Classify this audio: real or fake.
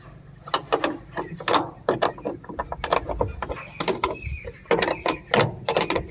real